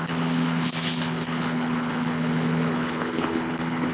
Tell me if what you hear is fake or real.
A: fake